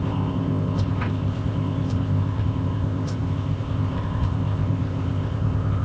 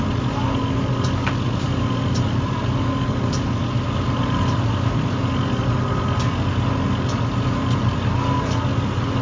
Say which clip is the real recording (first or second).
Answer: second